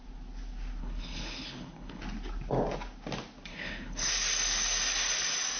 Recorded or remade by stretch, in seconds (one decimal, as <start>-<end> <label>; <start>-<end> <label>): 0.0-0.8 recorded; 0.8-2.0 remade; 2.0-3.5 recorded; 3.5-4.1 remade; 4.1-5.6 recorded